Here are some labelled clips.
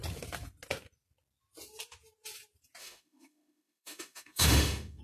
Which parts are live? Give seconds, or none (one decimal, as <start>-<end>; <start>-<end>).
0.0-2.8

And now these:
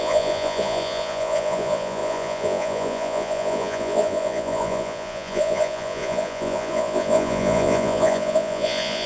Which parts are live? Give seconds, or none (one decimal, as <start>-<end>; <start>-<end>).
none

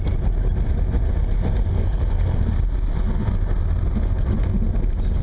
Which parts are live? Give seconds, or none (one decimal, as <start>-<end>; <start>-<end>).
0.0-1.7; 2.4-5.2

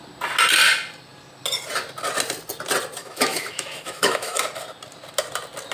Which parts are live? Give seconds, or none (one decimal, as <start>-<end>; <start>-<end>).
0.0-3.0; 4.4-5.7